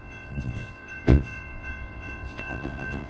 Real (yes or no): no